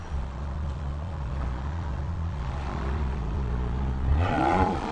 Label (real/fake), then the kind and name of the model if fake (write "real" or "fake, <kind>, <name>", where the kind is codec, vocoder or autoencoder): fake, vocoder, Vocos